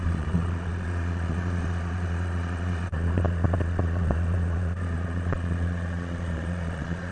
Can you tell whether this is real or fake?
fake